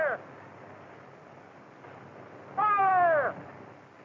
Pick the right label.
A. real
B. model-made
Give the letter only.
A